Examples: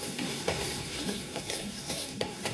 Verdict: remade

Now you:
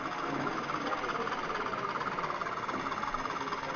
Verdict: recorded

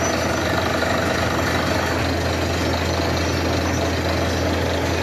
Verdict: recorded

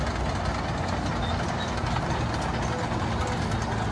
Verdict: recorded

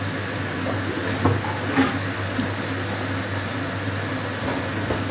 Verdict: recorded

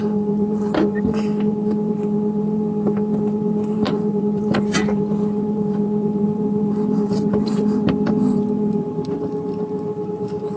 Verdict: remade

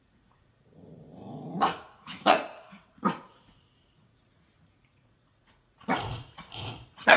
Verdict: remade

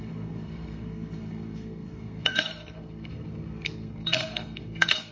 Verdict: remade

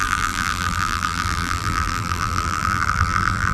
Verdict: remade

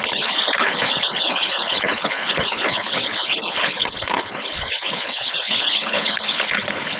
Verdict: remade